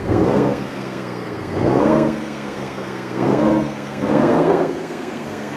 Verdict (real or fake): fake